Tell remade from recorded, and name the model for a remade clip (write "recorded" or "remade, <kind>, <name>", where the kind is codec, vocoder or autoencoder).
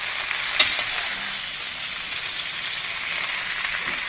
recorded